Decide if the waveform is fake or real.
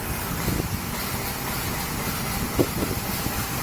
real